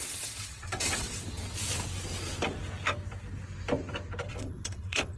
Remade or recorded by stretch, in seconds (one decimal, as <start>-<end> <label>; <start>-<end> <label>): 0.0-1.2 remade; 1.2-4.3 recorded; 4.3-5.2 remade